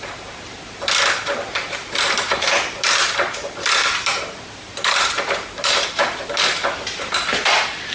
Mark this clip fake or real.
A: fake